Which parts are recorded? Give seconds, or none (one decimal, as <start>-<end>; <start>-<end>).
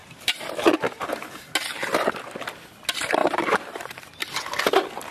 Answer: 0.5-3.2; 4.1-5.1